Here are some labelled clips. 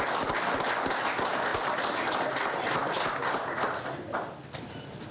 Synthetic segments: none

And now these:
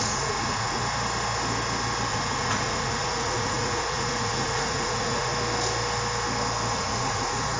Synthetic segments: 0.0-0.8; 2.1-5.3; 6.7-7.6

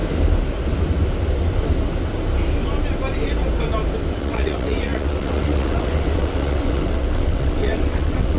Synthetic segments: 4.2-8.4

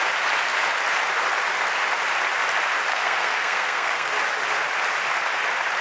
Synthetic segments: 2.9-4.1